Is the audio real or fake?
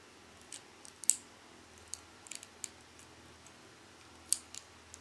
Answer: real